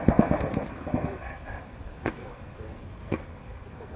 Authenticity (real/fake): fake